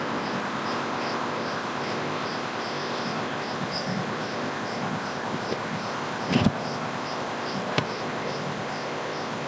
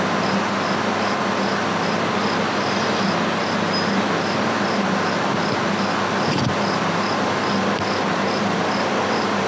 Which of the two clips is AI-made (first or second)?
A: first